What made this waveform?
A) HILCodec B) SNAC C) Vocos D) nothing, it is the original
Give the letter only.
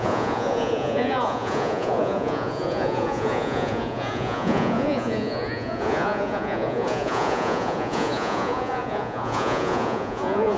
C